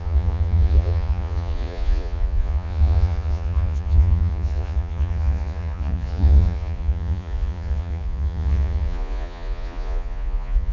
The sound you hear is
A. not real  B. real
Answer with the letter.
A